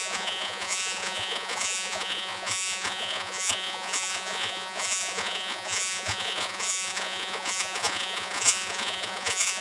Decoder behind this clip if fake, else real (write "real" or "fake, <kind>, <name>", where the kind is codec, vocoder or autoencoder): fake, vocoder, Vocos